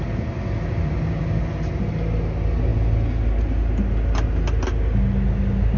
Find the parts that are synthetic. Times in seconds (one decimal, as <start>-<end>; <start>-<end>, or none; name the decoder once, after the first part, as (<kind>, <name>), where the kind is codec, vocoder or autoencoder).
none